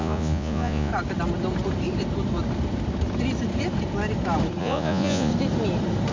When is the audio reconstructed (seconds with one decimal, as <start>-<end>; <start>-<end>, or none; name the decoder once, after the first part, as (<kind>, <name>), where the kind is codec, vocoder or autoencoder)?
0.0-0.9 (vocoder, Vocos); 4.6-5.3

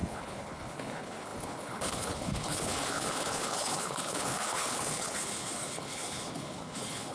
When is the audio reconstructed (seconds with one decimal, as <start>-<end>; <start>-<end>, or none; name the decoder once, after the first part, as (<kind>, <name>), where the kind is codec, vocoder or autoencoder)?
0.0-7.1 (codec, HILCodec)